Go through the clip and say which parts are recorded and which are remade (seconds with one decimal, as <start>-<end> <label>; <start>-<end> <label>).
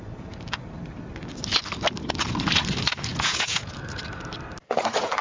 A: 0.0-3.1 recorded; 3.1-3.7 remade; 3.7-5.2 recorded